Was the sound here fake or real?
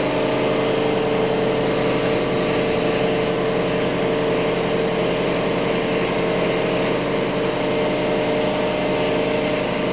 real